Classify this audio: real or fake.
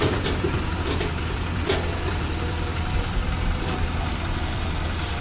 fake